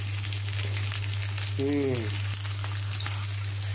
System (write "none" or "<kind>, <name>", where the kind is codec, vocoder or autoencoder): none